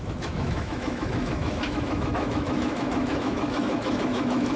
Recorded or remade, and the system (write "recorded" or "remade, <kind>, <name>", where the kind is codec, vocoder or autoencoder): remade, autoencoder, DAC-VAE